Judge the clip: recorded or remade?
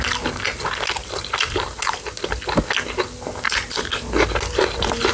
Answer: recorded